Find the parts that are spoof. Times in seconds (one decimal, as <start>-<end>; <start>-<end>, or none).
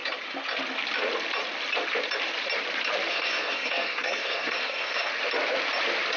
3.1-5.1